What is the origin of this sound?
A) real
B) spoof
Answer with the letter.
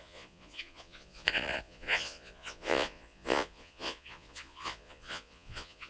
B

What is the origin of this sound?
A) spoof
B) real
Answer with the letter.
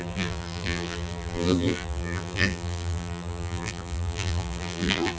A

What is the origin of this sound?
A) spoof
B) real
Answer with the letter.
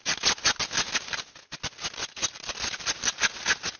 B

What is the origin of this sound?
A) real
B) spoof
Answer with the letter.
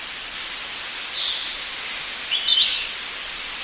A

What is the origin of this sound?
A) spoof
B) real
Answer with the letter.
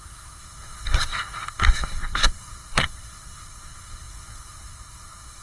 A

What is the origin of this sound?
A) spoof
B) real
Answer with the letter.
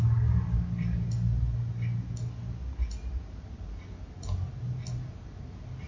B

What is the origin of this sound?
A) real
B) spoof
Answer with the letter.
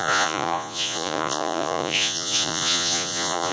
B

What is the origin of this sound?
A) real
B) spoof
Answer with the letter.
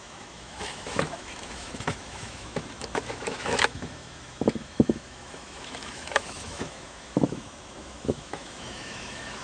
B